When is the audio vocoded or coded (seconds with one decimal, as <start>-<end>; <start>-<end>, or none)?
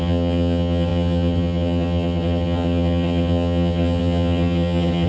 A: 0.0-5.1